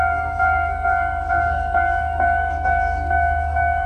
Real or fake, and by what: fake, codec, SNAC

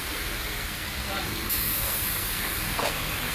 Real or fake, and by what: fake, codec, SNAC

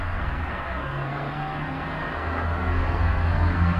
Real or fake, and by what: fake, codec, SNAC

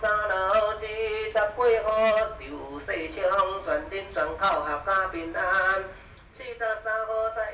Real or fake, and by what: real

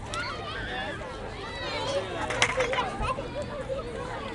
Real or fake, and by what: real